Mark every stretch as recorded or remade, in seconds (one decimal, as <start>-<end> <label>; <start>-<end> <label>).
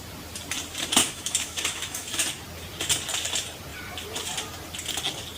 0.0-1.0 recorded; 1.0-2.2 remade; 2.2-5.4 recorded